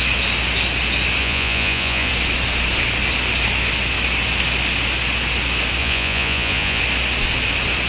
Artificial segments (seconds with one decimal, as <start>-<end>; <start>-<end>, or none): 1.2-2.1; 5.8-6.8